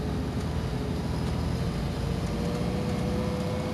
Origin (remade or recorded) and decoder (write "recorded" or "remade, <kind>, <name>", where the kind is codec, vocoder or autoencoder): recorded